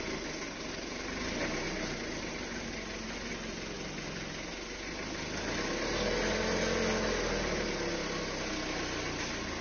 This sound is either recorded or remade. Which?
recorded